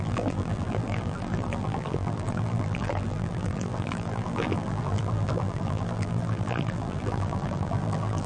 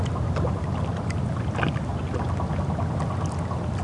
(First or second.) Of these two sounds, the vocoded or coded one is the first